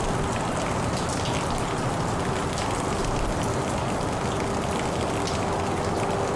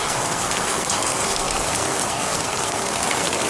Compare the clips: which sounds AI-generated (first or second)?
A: second